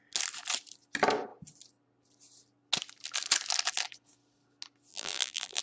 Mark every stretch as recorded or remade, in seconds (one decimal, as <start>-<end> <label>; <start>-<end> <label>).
0.0-4.9 recorded; 4.9-5.6 remade